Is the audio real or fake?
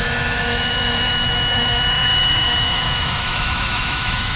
fake